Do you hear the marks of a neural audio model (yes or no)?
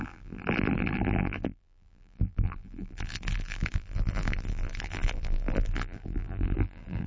yes